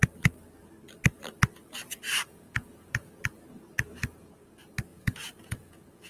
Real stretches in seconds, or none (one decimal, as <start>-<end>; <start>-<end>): 0.0-2.2; 3.1-4.9